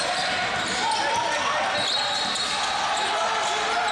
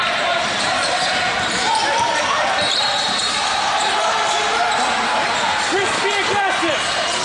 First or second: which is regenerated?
second